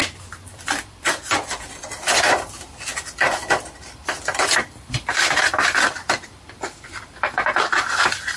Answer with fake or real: fake